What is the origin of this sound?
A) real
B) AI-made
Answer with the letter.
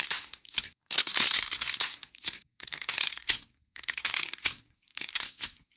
B